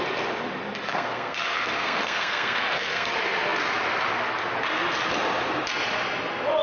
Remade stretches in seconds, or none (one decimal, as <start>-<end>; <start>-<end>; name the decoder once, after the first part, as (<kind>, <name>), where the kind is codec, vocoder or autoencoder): 0.9-3.1 (codec, SNAC)